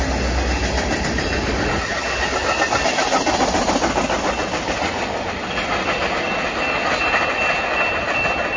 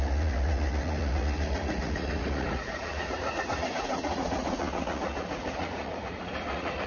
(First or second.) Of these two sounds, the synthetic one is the second